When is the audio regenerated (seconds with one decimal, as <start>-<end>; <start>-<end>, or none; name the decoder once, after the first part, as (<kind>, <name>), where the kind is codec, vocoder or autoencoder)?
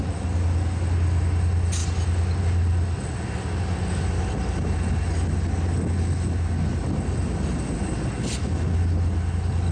none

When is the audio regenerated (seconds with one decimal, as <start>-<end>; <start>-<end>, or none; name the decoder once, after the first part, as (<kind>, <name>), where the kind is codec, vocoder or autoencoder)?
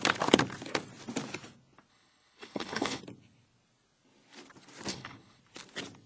1.9-3.0 (codec, HILCodec); 4.9-5.4